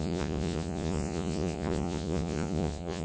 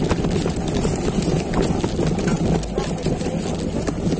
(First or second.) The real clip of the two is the second